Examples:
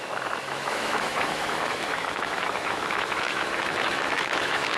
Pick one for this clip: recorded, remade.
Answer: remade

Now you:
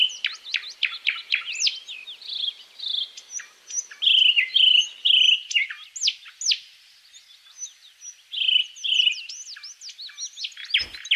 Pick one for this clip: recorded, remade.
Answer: recorded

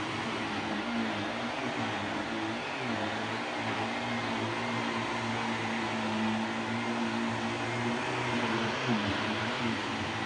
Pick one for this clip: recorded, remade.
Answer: recorded